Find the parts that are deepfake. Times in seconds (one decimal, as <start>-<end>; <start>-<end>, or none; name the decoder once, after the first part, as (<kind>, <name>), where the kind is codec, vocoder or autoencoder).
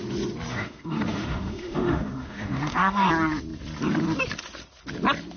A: 0.5-3.1 (autoencoder, DAC-VAE)